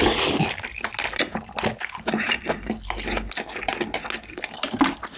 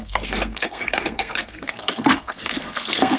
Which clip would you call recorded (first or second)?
first